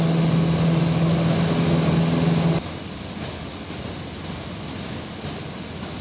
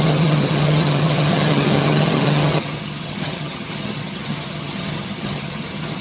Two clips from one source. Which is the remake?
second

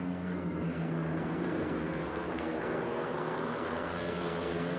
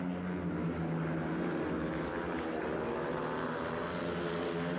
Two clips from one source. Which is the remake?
first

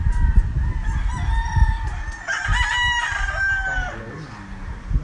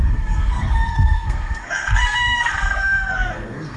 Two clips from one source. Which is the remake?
second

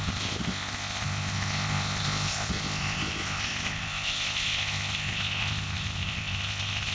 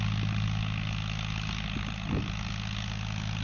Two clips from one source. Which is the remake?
first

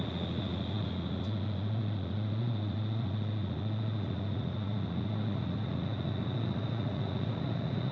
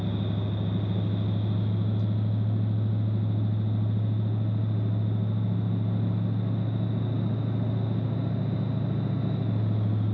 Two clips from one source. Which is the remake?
first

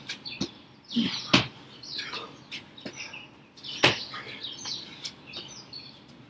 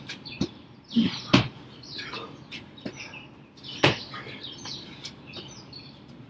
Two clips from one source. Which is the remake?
second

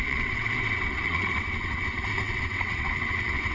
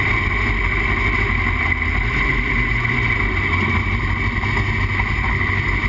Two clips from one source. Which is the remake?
first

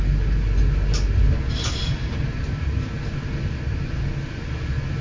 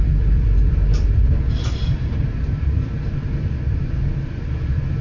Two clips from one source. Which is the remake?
second